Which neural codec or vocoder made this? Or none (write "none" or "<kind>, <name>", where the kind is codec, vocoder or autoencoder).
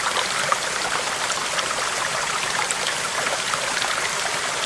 none